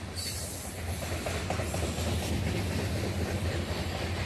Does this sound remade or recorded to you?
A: recorded